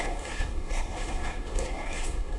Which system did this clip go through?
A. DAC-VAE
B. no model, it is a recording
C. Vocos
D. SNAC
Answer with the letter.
D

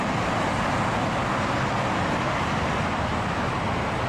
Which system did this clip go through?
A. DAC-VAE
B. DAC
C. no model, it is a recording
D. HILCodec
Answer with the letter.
C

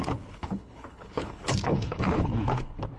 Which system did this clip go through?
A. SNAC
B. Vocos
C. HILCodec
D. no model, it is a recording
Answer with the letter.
C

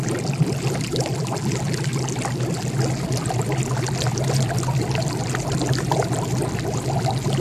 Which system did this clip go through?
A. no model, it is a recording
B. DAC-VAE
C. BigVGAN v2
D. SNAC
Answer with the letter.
A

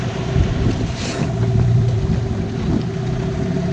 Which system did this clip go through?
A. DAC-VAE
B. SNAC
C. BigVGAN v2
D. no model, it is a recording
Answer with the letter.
D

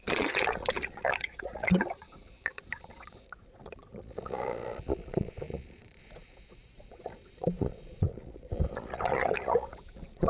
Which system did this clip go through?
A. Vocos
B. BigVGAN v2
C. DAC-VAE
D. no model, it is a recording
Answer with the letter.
A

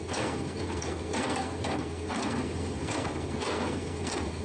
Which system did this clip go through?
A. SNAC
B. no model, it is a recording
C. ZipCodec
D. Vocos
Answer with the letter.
A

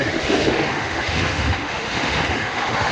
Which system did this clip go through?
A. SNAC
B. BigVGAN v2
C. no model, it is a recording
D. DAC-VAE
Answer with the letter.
D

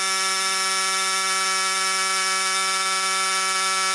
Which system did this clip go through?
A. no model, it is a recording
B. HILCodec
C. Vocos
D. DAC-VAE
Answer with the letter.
A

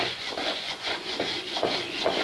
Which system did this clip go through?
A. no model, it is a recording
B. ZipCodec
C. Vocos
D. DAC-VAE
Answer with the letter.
C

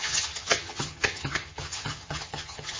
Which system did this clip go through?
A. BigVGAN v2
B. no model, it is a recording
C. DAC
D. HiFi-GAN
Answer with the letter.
D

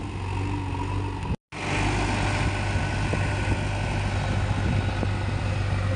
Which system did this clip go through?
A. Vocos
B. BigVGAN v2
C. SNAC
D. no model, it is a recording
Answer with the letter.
D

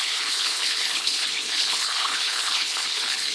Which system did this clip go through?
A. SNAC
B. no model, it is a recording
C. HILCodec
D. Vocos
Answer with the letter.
C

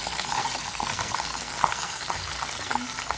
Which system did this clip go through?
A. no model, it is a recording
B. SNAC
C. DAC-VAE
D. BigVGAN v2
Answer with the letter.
B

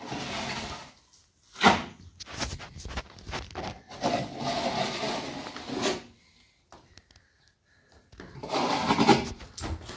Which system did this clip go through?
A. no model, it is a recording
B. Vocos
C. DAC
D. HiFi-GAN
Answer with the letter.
A